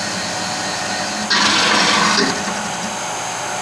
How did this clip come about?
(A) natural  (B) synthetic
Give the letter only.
A